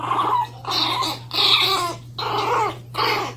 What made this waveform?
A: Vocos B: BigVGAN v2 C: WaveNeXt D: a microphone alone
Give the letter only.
D